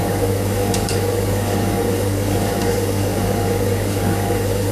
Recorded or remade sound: remade